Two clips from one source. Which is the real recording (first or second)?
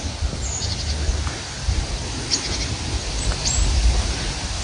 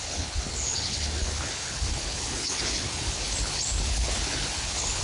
first